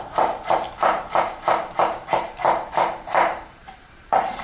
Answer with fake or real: fake